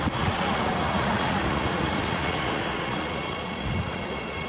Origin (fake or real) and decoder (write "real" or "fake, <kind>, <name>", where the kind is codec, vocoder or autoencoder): fake, vocoder, Vocos